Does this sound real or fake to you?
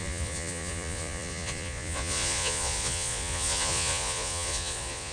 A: fake